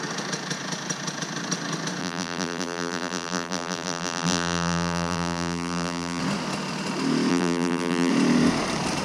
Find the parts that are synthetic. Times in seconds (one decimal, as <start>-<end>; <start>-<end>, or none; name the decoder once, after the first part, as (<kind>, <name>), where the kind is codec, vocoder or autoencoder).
2.0-6.2 (vocoder, BigVGAN v2); 7.3-8.1